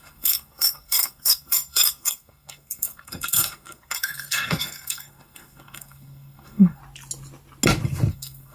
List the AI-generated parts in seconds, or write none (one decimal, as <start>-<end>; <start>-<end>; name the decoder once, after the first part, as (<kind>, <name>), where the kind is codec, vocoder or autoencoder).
0.0-6.8 (codec, SNAC); 8.1-8.5